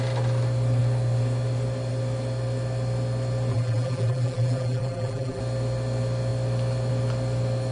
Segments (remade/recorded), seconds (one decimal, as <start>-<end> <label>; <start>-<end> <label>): 0.0-3.5 recorded; 3.5-5.4 remade; 5.4-7.7 recorded